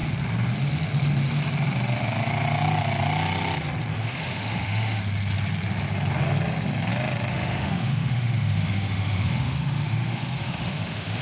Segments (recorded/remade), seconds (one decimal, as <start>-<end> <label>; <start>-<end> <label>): 0.0-3.9 recorded; 3.9-5.0 remade; 5.0-7.3 recorded; 7.3-11.2 remade